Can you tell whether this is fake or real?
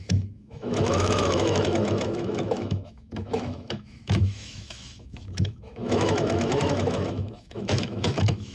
fake